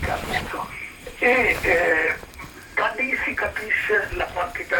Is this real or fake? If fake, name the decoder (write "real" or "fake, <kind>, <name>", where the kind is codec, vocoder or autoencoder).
fake, vocoder, BigVGAN v2